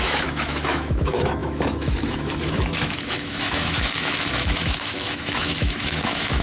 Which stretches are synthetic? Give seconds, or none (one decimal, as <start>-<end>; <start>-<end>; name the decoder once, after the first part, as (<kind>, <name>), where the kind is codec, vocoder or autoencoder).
0.0-6.4 (autoencoder, DAC-VAE)